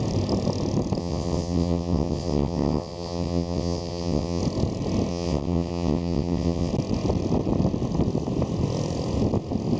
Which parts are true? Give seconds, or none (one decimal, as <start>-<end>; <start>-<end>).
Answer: 0.0-1.0; 4.4-5.1; 6.7-9.8